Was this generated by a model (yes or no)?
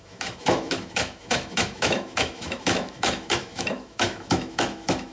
yes